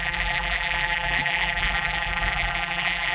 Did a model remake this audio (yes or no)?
yes